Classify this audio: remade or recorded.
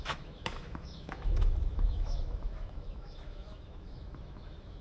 remade